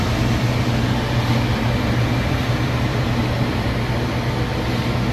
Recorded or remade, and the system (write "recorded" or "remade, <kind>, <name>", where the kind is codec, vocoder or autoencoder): recorded